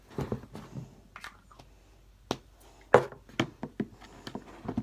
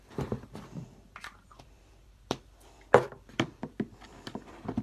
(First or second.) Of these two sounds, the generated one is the second